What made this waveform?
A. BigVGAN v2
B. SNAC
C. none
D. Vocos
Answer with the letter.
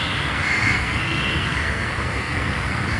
B